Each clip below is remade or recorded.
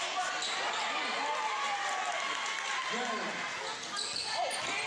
recorded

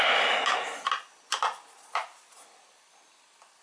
recorded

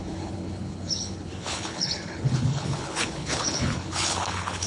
remade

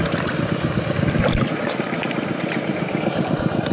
recorded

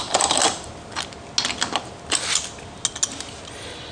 recorded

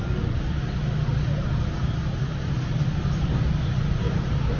recorded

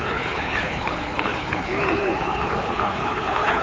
remade